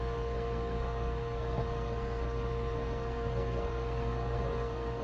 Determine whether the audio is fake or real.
fake